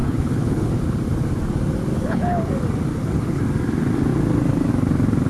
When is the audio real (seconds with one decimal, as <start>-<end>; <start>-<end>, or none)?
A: 0.8-1.9; 2.5-2.9; 3.4-5.3

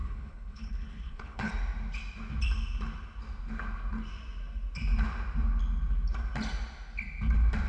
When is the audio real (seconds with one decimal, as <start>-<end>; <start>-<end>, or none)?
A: 1.5-7.7

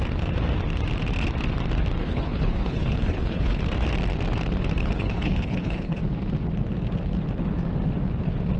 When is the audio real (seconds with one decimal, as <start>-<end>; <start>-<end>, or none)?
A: 0.0-2.0; 3.6-4.8; 6.0-8.6

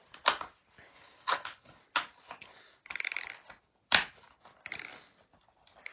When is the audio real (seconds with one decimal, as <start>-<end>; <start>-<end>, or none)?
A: 0.0-0.9; 1.8-5.9

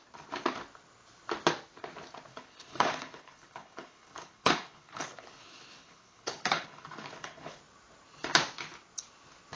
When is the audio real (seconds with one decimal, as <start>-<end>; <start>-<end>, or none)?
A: 0.0-2.3; 7.6-9.6

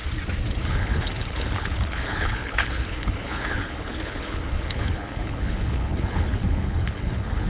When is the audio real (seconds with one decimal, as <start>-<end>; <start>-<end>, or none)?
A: 0.0-0.6